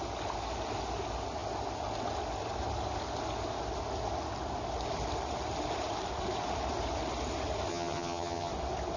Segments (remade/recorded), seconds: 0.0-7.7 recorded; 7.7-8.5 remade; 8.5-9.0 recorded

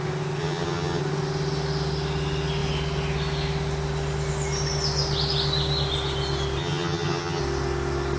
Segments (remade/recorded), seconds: 0.0-0.4 recorded; 0.4-1.0 remade; 1.0-6.6 recorded; 6.6-7.4 remade; 7.4-8.2 recorded

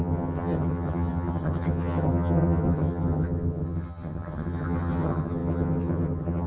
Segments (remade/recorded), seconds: 0.0-6.5 remade

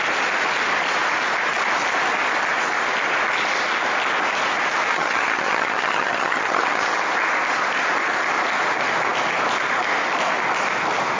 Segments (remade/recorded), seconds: 0.0-4.9 recorded; 4.9-7.0 remade; 7.0-11.2 recorded

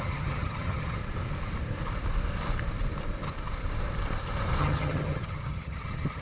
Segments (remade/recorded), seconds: 0.0-1.0 remade; 1.0-4.6 recorded; 4.6-6.2 remade

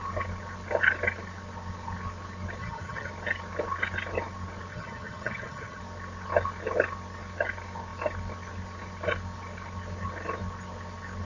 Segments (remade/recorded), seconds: 0.0-2.6 recorded; 2.6-3.1 remade; 3.1-4.7 recorded; 4.7-5.8 remade; 5.8-11.2 recorded